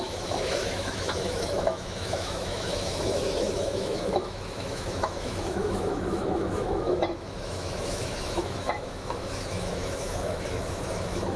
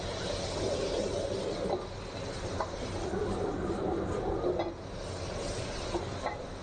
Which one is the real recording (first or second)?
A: second